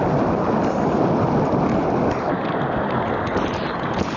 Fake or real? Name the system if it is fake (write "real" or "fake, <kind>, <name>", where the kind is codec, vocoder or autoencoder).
real